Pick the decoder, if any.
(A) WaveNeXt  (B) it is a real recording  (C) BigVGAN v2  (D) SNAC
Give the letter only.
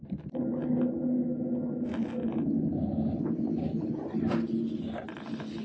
B